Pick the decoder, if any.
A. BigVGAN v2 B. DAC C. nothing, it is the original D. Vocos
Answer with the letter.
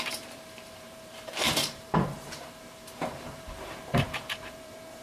A